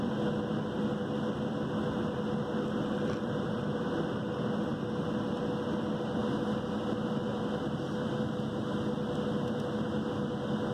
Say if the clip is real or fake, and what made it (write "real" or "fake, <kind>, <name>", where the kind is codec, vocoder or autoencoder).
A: real